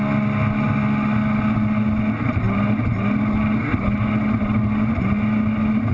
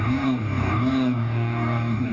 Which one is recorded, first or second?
first